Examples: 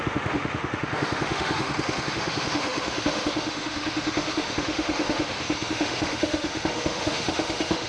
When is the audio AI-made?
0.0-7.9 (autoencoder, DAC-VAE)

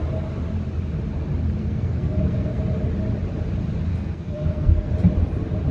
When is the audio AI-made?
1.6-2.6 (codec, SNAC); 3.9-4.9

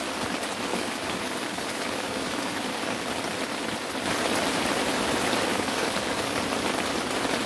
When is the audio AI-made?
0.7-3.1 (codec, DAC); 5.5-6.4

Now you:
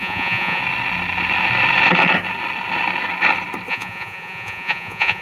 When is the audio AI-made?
0.0-0.6 (vocoder, Vocos); 3.7-5.2

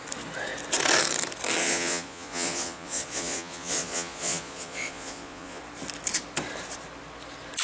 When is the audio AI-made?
1.6-5.6 (vocoder, Vocos)

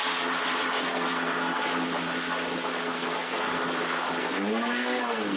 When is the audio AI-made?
0.8-1.7 (codec, SNAC); 2.8-3.6; 4.2-5.4